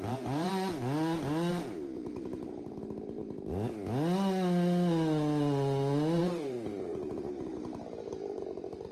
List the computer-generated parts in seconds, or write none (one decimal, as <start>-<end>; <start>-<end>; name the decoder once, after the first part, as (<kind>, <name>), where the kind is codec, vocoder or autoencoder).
0.0-0.5 (vocoder, BigVGAN v2); 1.5-3.2; 6.2-8.9